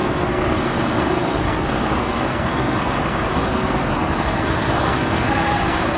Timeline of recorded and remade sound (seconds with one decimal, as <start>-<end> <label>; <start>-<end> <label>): 0.0-6.0 remade